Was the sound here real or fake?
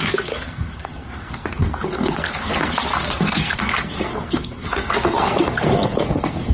fake